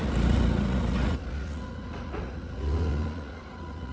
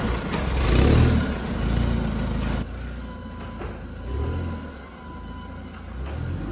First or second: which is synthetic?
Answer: first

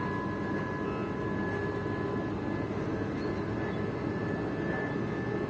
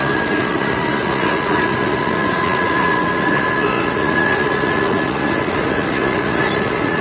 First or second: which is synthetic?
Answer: second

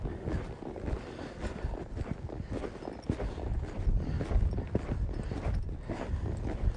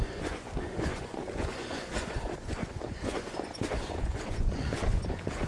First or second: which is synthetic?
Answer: second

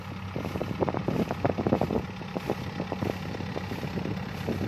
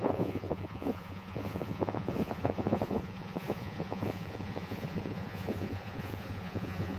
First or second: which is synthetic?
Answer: second